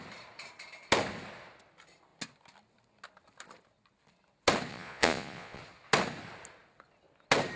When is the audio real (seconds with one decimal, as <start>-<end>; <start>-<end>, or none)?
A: 0.0-4.7; 5.6-7.6